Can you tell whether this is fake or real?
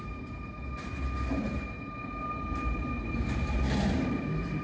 fake